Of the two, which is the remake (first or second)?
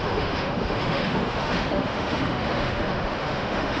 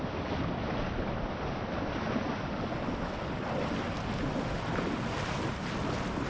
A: first